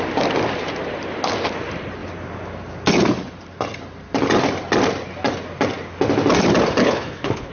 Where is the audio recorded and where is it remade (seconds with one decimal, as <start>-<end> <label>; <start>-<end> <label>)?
0.0-6.8 recorded; 6.8-7.5 remade